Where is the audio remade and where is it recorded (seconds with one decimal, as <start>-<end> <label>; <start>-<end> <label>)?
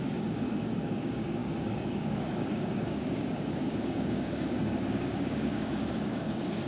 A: 0.0-6.7 remade